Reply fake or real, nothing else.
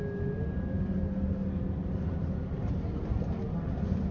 real